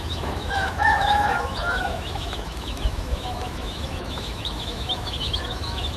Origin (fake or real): fake